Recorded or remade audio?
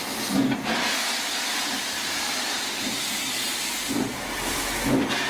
recorded